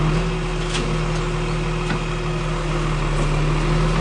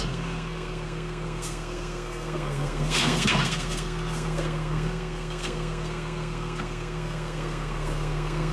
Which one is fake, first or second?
second